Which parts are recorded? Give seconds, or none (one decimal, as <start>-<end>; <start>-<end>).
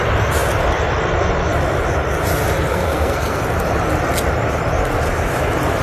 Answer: 0.0-2.7; 3.4-5.8